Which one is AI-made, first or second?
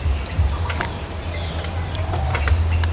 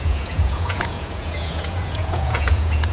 second